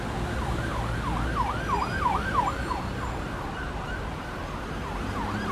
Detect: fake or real real